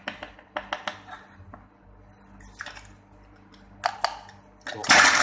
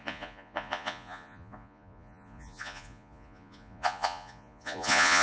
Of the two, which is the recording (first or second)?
first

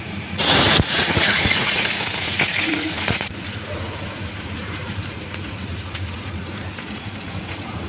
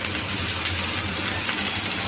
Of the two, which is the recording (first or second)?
second